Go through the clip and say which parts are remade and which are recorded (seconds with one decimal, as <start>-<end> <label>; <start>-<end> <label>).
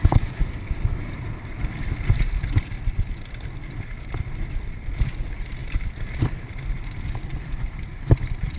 0.0-1.2 remade; 1.2-8.6 recorded